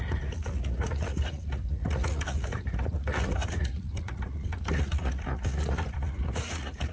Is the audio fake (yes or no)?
yes